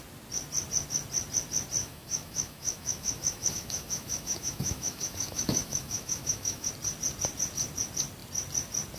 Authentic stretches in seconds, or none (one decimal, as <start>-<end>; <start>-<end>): 0.0-1.8; 6.7-9.0